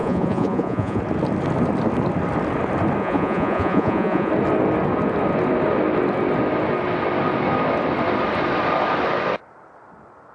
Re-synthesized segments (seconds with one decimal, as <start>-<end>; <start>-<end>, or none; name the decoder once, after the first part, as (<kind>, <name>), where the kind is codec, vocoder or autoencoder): 0.0-1.0 (vocoder, Vocos); 3.0-4.3